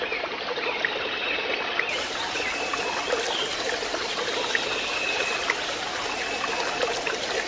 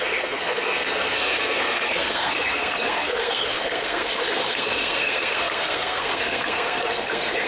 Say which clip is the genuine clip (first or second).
first